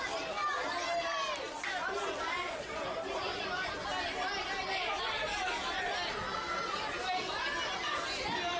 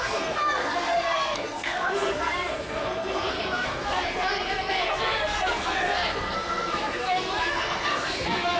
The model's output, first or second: second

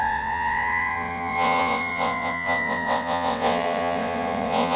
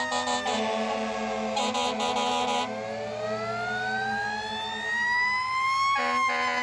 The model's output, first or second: first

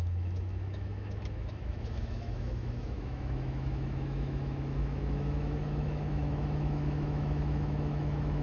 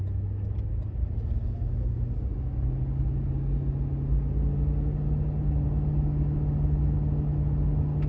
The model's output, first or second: first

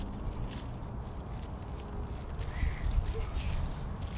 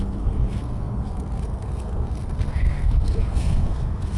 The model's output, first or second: second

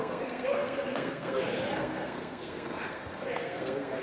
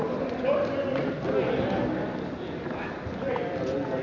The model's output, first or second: first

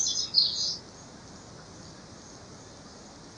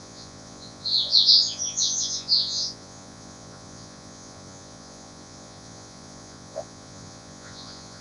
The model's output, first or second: second